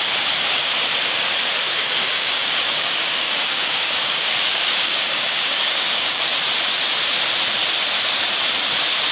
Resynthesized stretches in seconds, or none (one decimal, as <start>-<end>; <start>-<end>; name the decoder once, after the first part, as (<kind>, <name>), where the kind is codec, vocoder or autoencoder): 1.6-6.2 (codec, DAC)